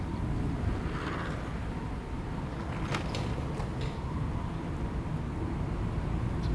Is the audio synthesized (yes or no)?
no